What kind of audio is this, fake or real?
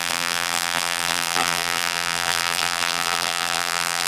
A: fake